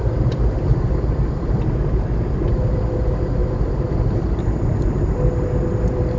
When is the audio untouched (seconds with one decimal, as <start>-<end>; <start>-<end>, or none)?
0.0-6.2